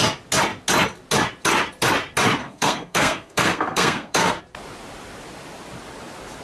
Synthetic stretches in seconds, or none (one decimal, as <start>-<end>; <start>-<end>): 2.4-4.4